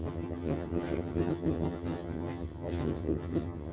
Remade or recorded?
remade